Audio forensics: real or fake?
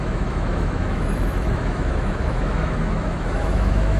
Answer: fake